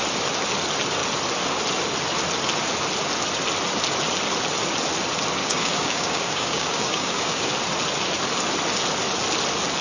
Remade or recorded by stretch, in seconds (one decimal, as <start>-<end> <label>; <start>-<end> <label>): 0.0-5.4 recorded; 5.4-7.5 remade; 7.5-9.8 recorded

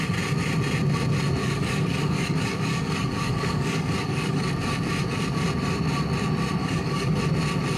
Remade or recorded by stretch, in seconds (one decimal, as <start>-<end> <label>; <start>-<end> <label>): 0.0-1.4 recorded; 1.4-4.5 remade; 4.5-6.6 recorded; 6.6-7.2 remade; 7.2-7.8 recorded

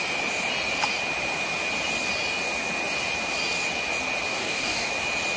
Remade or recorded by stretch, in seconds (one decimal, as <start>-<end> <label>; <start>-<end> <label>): 0.0-4.3 recorded; 4.3-4.9 remade; 4.9-5.4 recorded

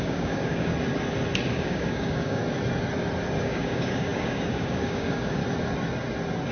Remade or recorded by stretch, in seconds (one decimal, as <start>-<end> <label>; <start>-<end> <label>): 0.0-0.7 remade; 0.7-1.5 recorded; 1.5-2.4 remade; 2.4-3.4 recorded; 3.4-5.4 remade; 5.4-6.5 recorded

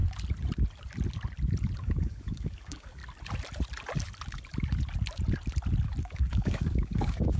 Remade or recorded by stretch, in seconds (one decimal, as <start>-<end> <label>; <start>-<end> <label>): 0.0-1.8 recorded; 1.8-3.0 remade; 3.0-6.0 recorded; 6.0-7.4 remade